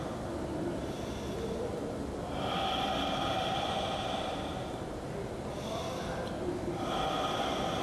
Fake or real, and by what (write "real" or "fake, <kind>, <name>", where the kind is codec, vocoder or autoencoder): real